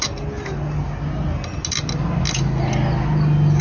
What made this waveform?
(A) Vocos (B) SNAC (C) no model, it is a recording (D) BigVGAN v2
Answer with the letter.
C